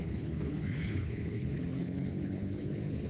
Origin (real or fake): fake